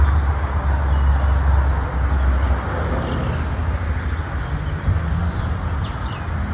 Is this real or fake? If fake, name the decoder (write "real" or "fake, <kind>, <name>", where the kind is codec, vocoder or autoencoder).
real